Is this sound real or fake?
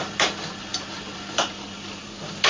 fake